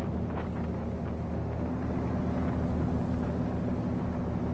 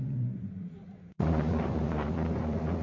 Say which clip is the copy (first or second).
second